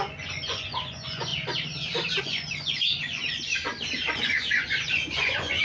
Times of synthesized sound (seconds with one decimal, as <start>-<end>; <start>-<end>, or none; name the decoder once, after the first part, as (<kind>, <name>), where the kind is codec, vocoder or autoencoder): 0.0-1.3 (vocoder, Vocos); 2.2-3.5; 4.1-5.6